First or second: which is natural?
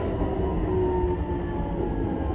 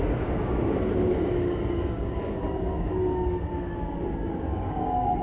first